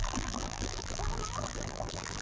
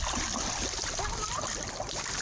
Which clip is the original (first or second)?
second